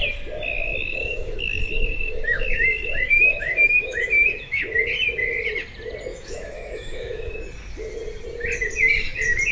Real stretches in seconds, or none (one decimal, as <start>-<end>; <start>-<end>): 0.0-0.7; 4.6-6.1; 7.4-9.5